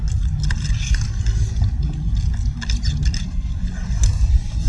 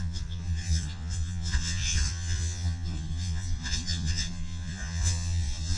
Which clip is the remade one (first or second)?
second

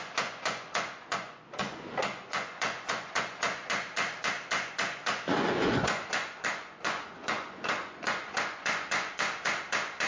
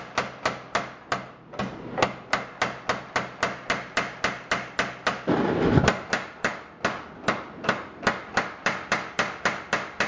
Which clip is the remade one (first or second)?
first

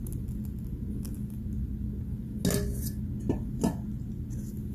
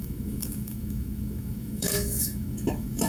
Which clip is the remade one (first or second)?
second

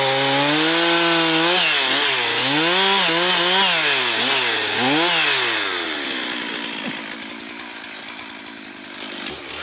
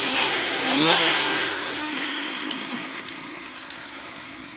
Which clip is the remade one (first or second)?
second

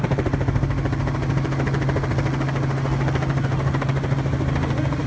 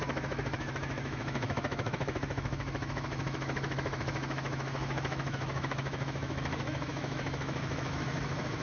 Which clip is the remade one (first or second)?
second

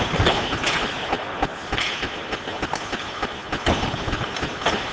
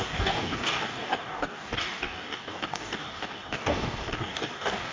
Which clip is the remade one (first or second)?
second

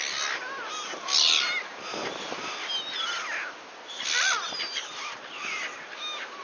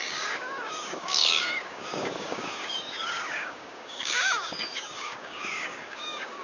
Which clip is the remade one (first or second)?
second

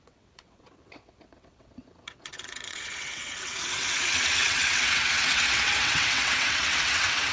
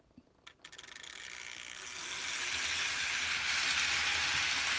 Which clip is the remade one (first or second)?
first